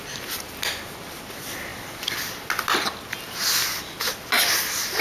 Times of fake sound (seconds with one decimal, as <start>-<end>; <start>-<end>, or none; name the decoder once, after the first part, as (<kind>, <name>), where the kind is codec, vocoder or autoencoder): none